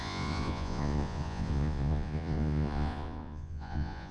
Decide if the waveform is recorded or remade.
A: remade